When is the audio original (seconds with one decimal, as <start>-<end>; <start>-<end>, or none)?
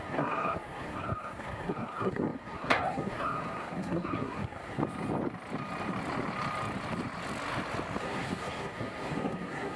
4.8-8.0